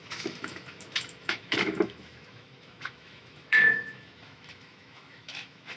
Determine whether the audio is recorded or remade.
remade